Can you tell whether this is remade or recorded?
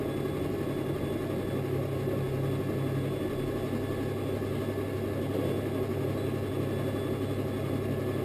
recorded